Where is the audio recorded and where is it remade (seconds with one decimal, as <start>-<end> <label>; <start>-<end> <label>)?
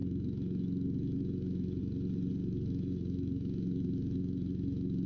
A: 0.0-1.8 remade; 1.8-2.4 recorded; 2.4-5.1 remade